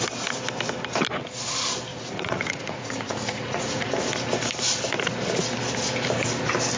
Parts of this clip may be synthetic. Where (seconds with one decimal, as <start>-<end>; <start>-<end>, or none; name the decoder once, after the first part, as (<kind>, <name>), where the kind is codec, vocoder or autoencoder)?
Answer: 1.9-3.9 (vocoder, Vocos)